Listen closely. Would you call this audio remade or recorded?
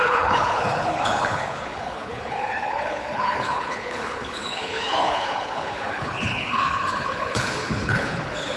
remade